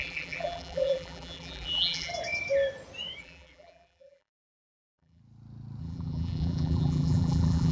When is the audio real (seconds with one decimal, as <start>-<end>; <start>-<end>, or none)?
2.1-3.2; 5.2-5.8

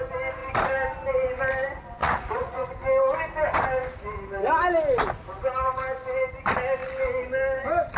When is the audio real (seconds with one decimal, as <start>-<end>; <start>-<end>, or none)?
0.0-2.0; 2.7-8.0

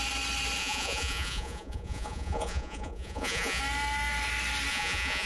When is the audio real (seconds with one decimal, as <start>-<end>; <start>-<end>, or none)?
0.0-0.6; 3.6-4.7

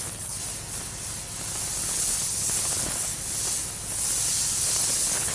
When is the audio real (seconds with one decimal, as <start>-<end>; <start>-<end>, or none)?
0.4-1.9; 3.1-4.6

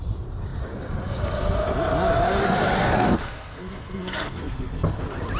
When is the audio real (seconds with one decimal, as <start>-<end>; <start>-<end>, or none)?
0.0-2.8; 5.0-5.4

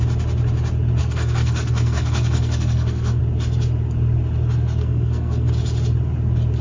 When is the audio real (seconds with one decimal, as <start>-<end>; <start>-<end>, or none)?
0.0-1.0; 3.2-4.8; 5.5-6.6

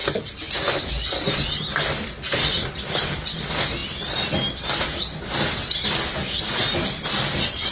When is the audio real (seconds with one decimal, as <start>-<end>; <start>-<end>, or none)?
0.0-7.7

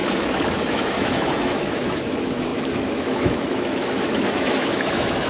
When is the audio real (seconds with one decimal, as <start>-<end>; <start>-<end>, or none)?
none